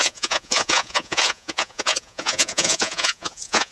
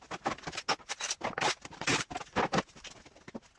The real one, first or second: second